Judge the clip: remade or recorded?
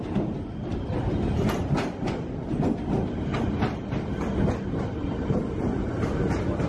recorded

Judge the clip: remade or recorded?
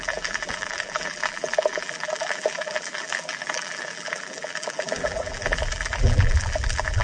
remade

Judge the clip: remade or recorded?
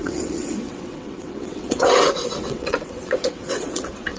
remade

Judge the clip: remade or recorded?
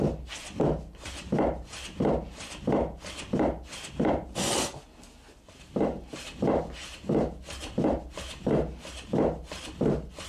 recorded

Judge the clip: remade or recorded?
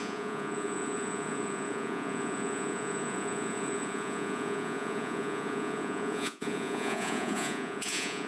remade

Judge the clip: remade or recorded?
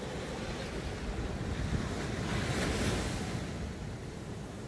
recorded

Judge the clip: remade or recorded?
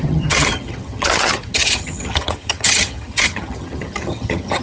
remade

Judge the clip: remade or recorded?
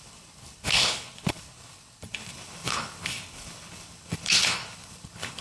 remade